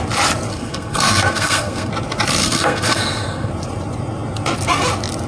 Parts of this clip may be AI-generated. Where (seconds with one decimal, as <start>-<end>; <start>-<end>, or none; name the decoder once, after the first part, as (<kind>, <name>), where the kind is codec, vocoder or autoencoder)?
0.5-1.9 (codec, SNAC); 2.4-3.5